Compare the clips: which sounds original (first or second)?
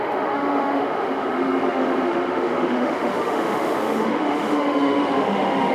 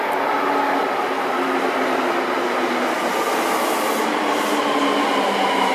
second